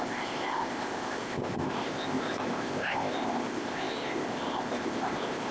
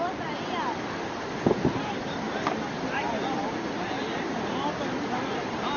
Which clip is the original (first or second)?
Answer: second